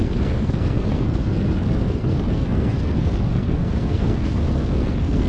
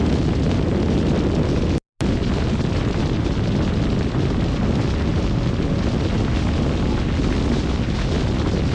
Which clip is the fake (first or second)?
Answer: first